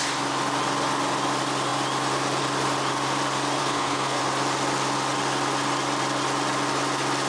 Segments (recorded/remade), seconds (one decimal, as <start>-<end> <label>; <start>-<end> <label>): 0.0-3.6 recorded; 3.6-4.2 remade; 4.2-7.3 recorded